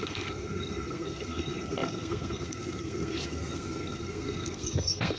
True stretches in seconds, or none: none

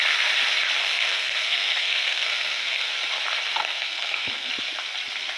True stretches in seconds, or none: 0.0-0.8; 2.9-3.6; 4.5-5.4

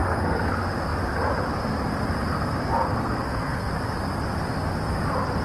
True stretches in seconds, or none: 0.5-2.8; 3.7-5.4

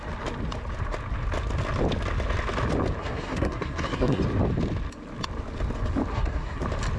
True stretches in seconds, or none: 0.0-3.0; 4.2-6.1; 6.6-7.0

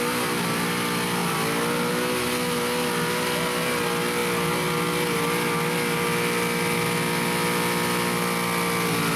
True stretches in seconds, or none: 0.0-9.2

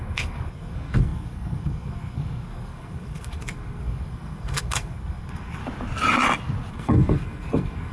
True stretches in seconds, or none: 5.6-6.7

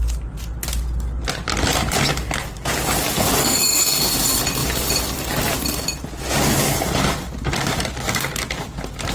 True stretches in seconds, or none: 0.0-3.4; 4.0-9.1

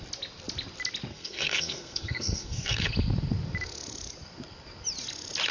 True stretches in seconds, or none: 0.0-1.1; 2.9-5.5